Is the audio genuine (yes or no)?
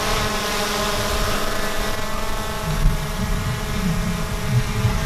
yes